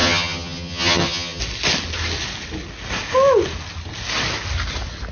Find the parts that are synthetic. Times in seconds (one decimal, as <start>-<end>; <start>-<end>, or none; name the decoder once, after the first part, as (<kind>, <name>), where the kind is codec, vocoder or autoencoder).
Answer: 0.0-1.4 (vocoder, HiFi-GAN)

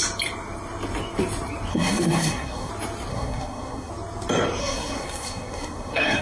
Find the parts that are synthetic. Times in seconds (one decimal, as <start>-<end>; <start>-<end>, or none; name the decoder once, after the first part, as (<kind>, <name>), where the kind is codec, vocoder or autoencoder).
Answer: 1.7-2.7 (codec, SNAC); 3.1-3.9; 4.6-6.2

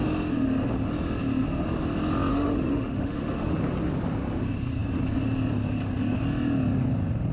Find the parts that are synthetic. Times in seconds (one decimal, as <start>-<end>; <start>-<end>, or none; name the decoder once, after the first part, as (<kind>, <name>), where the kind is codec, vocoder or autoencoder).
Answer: 2.3-3.5 (autoencoder, DAC-VAE)